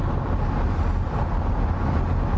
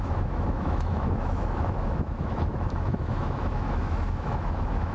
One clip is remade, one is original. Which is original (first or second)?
first